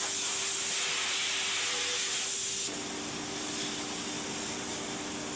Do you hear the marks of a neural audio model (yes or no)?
no